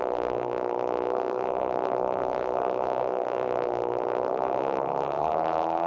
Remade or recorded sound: remade